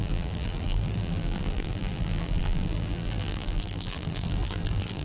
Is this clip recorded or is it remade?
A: remade